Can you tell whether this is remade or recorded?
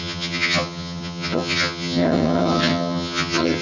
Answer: remade